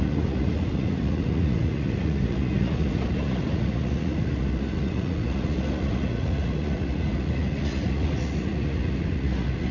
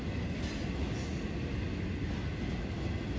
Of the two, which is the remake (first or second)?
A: first